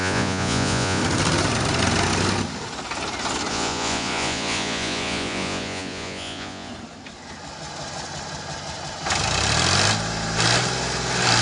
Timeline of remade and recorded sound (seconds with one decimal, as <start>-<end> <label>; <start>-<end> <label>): 0.0-1.0 remade; 1.0-3.5 recorded; 3.5-6.7 remade; 6.7-11.4 recorded